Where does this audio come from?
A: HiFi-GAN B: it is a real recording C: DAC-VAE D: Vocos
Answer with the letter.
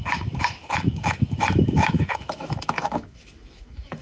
C